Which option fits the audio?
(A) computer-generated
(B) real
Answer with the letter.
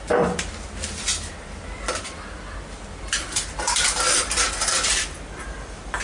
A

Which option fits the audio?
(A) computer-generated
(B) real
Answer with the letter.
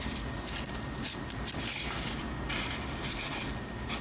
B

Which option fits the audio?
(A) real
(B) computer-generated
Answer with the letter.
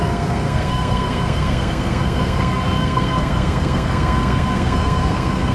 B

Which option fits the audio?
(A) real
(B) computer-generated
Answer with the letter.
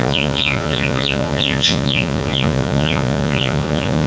B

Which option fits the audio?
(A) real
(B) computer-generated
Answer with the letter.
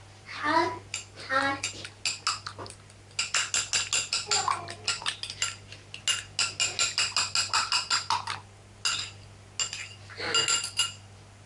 A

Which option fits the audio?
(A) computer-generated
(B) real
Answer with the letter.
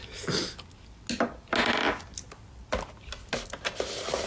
B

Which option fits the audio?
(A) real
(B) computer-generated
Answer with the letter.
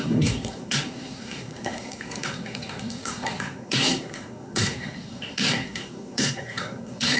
B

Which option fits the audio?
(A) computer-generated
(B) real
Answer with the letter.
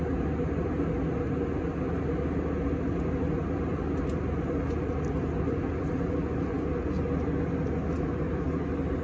B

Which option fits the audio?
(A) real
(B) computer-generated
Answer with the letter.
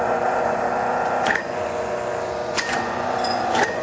B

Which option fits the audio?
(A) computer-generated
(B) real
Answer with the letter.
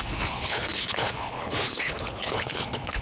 A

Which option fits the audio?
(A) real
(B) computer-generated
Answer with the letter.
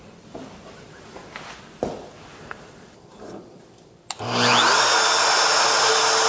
A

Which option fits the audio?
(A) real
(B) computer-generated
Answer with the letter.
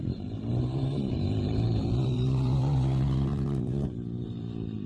B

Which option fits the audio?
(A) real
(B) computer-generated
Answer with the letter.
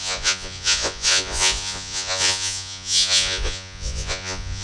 B